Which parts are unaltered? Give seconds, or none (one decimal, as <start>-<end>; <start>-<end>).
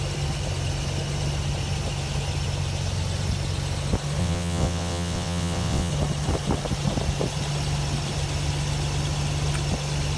0.0-4.2; 5.9-10.2